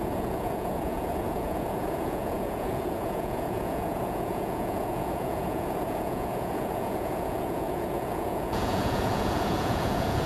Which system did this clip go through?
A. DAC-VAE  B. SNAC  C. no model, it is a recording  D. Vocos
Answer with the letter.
D